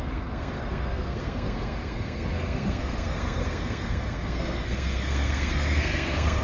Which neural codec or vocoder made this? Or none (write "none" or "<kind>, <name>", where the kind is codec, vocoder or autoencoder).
codec, SNAC